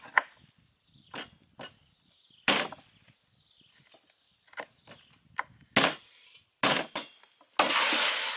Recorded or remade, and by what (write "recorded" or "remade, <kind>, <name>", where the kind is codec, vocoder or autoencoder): recorded